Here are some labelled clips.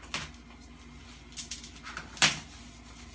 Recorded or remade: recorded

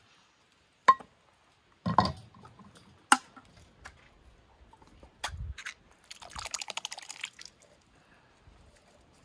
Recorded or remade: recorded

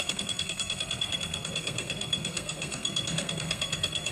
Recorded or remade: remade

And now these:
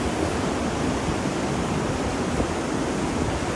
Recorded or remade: recorded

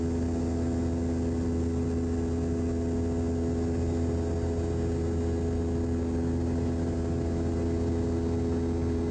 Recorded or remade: recorded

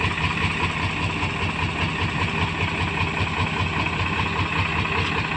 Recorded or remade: recorded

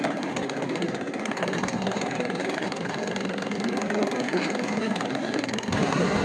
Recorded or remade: remade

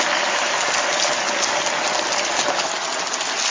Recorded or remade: recorded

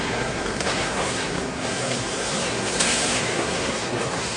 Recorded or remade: remade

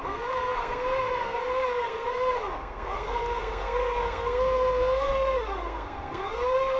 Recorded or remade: remade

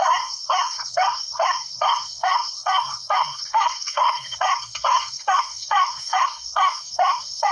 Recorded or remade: remade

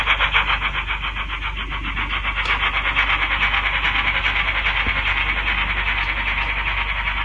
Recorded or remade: recorded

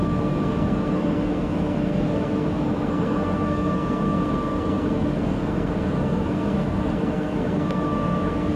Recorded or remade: remade